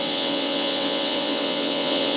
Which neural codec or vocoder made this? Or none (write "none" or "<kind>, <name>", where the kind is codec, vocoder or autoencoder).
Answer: vocoder, WaveNeXt